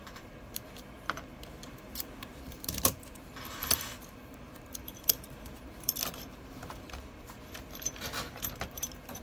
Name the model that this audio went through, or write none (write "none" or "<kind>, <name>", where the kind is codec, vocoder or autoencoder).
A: vocoder, BigVGAN v2